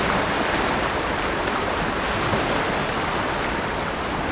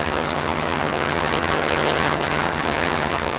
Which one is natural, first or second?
first